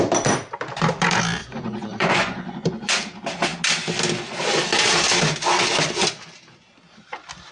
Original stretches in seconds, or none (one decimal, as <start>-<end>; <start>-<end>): 0.0-1.4; 2.9-7.5